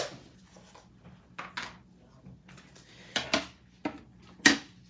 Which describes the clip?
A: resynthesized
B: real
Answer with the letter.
B